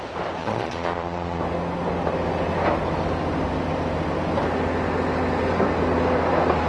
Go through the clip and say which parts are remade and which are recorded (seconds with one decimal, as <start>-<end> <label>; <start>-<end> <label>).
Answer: 0.0-0.4 recorded; 0.4-1.4 remade; 1.4-6.7 recorded